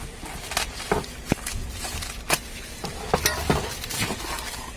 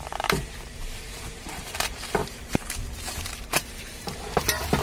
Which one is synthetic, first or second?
second